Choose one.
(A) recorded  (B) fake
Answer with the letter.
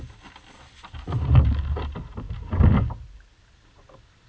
A